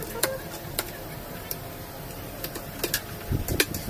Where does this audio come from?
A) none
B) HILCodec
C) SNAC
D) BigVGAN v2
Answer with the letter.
A